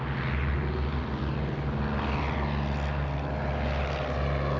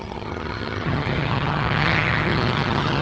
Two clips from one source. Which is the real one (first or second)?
first